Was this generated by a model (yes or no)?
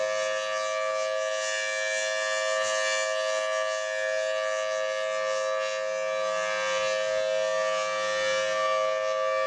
no